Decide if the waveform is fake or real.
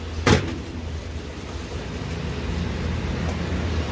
real